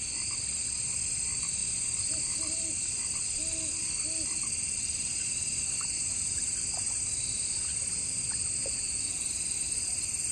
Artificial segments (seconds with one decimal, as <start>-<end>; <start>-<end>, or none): 8.6-9.3